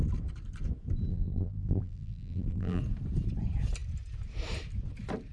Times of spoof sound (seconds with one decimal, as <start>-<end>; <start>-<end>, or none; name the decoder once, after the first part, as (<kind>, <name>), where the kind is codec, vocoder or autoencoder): 1.1-2.8 (vocoder, BigVGAN v2)